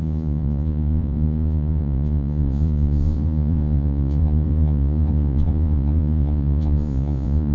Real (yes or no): no